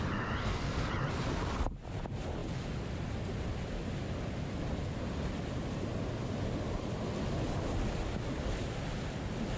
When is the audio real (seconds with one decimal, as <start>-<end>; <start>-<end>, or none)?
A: 0.0-0.4; 0.9-9.6